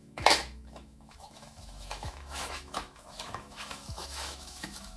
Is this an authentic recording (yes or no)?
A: no